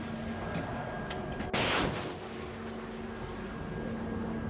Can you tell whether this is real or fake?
real